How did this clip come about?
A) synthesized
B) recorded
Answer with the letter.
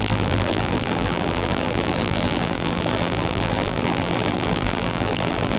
A